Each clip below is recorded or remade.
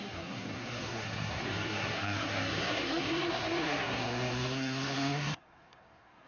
remade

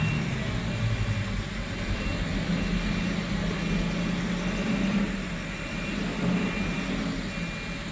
recorded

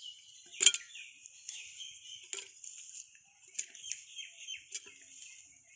recorded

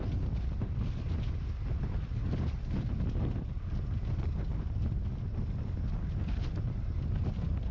recorded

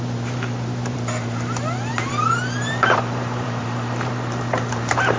remade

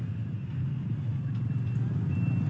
recorded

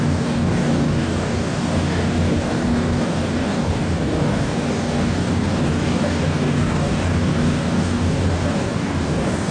remade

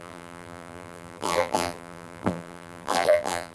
remade